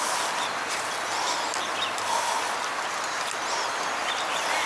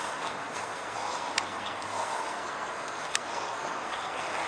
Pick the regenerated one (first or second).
second